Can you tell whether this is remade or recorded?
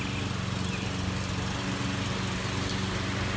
recorded